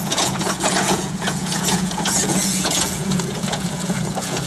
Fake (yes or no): yes